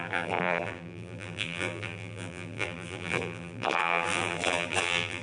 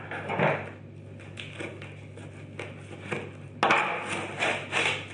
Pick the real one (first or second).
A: second